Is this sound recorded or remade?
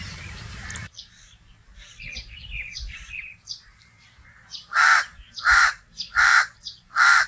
remade